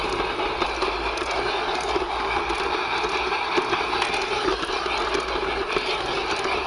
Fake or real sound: real